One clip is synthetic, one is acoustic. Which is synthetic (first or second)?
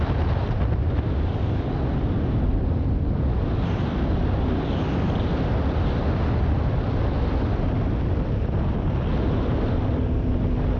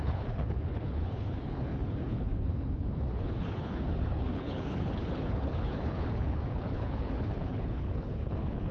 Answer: second